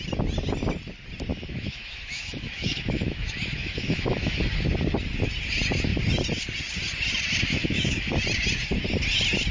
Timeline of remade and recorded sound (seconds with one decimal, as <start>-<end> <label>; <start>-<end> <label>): 0.0-1.3 recorded; 1.3-4.4 remade; 4.4-7.5 recorded; 7.5-8.1 remade; 8.1-9.5 recorded